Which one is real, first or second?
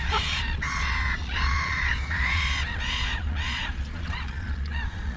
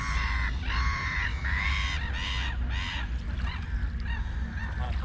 second